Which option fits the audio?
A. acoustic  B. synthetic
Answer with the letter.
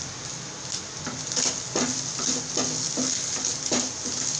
A